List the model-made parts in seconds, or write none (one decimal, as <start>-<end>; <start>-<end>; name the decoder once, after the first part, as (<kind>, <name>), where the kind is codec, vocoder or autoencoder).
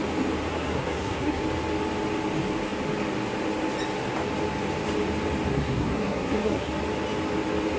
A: 0.5-1.4 (codec, SNAC); 5.5-6.7